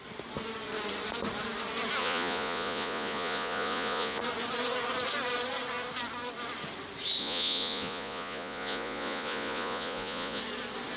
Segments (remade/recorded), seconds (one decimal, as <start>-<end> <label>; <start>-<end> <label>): 0.0-2.0 recorded; 2.0-4.2 remade; 4.2-7.2 recorded; 7.2-10.4 remade; 10.4-11.0 recorded